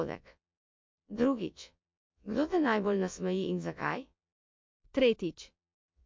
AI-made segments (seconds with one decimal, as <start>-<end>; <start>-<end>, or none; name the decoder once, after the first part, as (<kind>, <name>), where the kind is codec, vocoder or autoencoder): 0.0-4.4 (vocoder, Vocos); 5.5-6.1

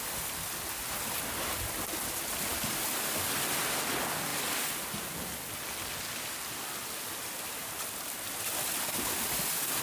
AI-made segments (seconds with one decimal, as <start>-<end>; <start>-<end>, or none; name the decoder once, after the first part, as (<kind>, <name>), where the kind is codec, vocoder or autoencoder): none

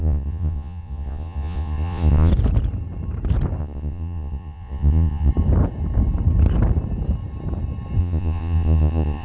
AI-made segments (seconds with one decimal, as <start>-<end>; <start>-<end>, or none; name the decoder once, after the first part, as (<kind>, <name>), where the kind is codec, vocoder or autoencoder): 0.0-2.3 (vocoder, Vocos); 3.6-5.3; 8.0-9.2

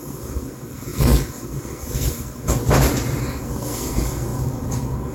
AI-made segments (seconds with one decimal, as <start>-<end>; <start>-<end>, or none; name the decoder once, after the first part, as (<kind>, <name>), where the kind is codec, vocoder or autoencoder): 0.0-2.6 (codec, SNAC); 3.2-5.1

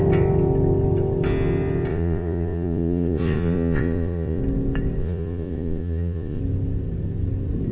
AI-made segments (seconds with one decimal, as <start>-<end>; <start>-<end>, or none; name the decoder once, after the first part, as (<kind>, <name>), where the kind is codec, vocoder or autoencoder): 1.9-4.4 (vocoder, Vocos); 5.0-6.4

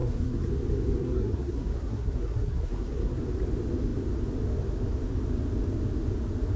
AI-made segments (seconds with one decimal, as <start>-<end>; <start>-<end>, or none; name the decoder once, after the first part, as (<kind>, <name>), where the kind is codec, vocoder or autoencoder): 0.0-0.5 (codec, SNAC); 1.0-3.2

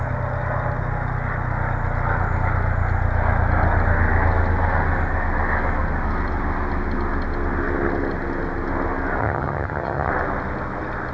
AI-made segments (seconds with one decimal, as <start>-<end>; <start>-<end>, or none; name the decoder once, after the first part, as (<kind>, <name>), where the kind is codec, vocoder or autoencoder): 9.2-10.1 (vocoder, HiFi-GAN)